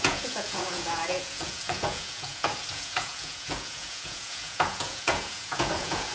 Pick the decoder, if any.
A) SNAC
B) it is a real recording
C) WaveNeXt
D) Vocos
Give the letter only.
D